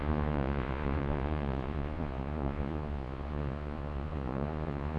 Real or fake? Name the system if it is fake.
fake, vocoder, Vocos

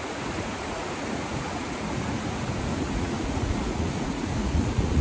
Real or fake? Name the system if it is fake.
fake, vocoder, Vocos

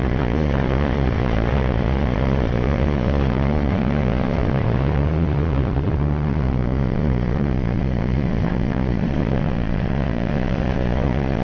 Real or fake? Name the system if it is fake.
fake, vocoder, Vocos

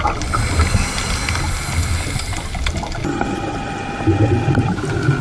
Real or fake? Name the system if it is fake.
real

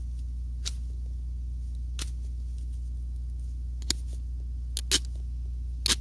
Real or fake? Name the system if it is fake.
real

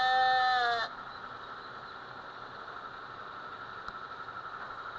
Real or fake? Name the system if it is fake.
real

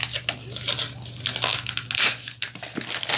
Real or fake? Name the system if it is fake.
real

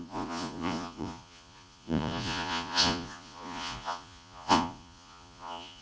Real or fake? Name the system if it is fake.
fake, vocoder, Vocos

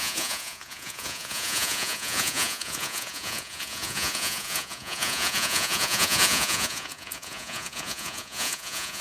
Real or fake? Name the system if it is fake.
fake, vocoder, Vocos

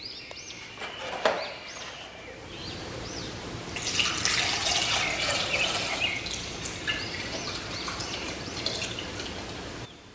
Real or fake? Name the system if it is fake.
real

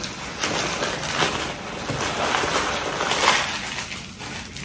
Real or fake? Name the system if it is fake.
real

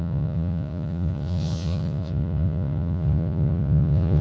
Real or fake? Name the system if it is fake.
fake, vocoder, Vocos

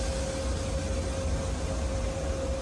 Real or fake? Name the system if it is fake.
real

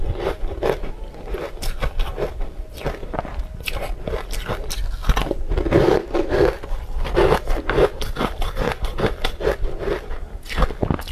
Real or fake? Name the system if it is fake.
real